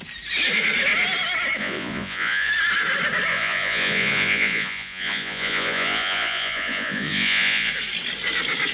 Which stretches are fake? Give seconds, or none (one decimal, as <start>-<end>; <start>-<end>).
1.6-2.5; 3.3-7.7